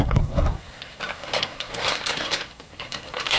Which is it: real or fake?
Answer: fake